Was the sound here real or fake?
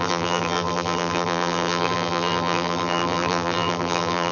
fake